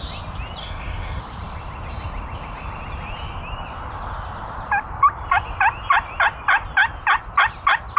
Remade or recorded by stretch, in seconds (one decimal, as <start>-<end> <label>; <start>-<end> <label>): 0.0-0.6 recorded; 0.6-1.2 remade; 1.2-8.0 recorded